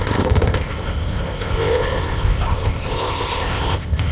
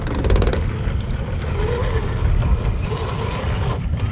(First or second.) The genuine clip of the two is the second